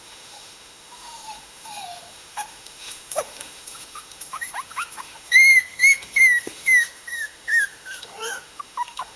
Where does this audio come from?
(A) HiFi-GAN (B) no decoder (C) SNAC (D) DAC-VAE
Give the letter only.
D